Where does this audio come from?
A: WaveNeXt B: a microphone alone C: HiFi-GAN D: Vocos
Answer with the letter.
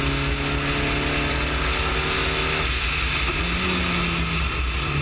B